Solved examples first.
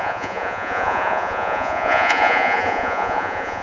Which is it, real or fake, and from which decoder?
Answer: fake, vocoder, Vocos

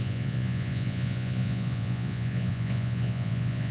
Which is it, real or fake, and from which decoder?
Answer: fake, vocoder, Vocos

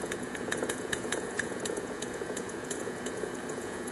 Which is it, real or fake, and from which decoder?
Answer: fake, vocoder, Vocos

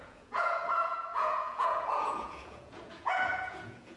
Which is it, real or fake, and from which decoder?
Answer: fake, vocoder, Vocos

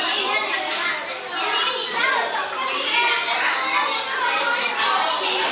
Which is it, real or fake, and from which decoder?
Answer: real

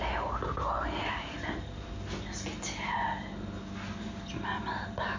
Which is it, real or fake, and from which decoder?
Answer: real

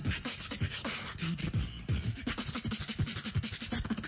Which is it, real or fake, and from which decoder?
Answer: real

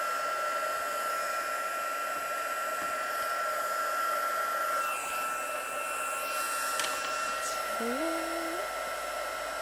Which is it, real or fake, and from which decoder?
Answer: real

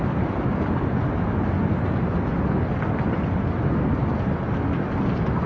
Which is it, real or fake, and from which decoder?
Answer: real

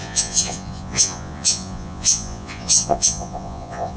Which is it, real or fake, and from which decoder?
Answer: fake, vocoder, Vocos